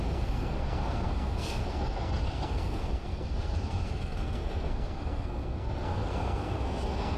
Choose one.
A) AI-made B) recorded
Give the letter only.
A